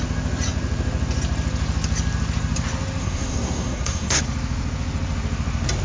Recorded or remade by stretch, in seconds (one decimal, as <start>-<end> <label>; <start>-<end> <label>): 0.0-3.0 recorded; 3.0-4.2 remade; 4.2-5.8 recorded